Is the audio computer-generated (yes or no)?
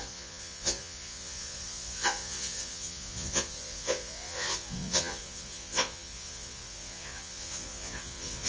yes